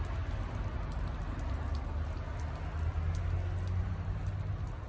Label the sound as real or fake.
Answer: real